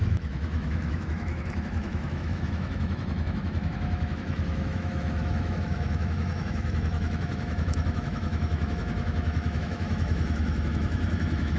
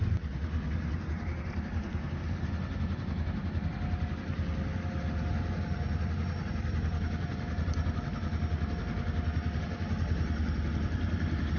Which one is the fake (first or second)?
first